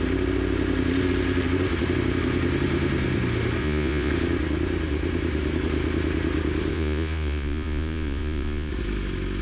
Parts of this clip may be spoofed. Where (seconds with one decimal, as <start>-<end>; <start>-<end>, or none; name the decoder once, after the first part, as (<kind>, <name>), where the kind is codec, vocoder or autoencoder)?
3.6-4.1 (vocoder, Vocos); 6.7-8.7